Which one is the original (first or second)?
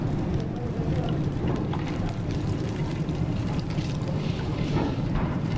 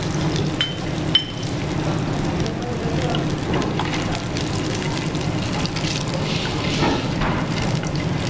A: second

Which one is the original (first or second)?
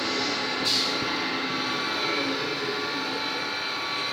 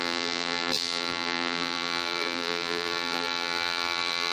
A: first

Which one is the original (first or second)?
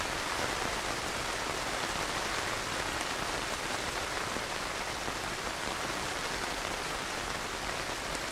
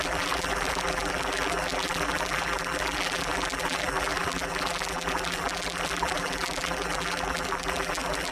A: first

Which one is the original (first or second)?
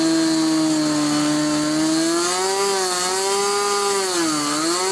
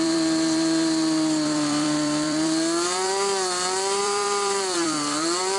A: first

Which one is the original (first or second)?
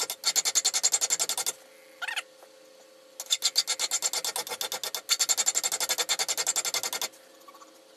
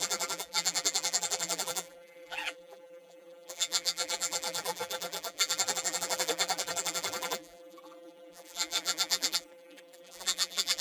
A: first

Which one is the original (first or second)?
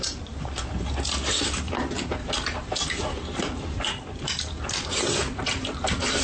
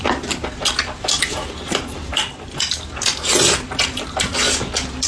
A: second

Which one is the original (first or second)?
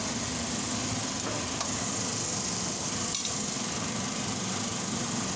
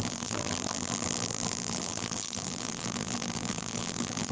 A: first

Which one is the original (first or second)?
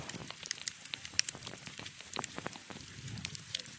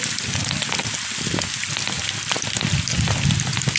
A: second